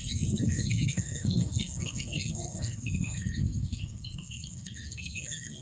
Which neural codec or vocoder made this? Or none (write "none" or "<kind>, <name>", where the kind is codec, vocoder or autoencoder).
codec, SNAC